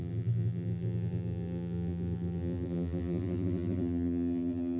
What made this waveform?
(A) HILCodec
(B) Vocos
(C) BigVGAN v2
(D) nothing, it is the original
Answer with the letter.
C